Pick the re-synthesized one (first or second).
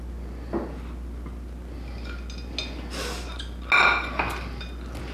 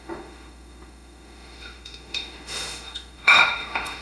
second